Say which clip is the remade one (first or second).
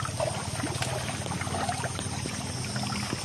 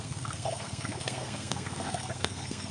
second